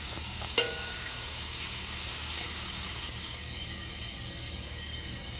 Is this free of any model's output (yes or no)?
no